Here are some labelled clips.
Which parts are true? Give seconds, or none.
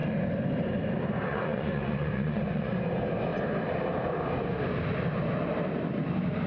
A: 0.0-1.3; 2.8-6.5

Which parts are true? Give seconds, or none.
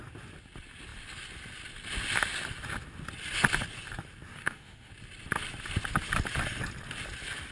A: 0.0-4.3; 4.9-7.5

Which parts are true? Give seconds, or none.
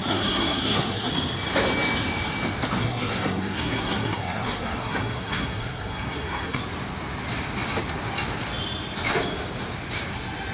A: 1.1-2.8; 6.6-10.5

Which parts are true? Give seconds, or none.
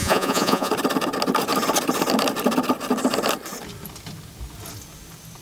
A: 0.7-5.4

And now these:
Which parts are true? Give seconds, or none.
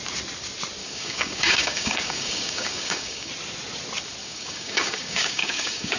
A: 0.0-0.8; 3.3-4.2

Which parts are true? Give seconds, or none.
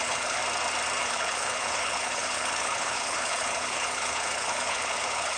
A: 0.4-1.0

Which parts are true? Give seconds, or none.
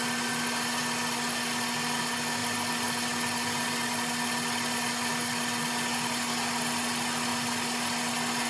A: 0.0-8.5